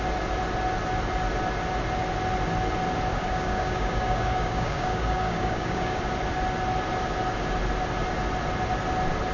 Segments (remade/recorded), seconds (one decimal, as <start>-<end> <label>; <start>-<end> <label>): 0.0-3.1 recorded; 3.1-6.0 remade; 6.0-9.3 recorded